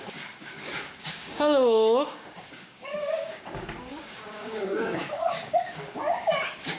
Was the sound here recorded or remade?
remade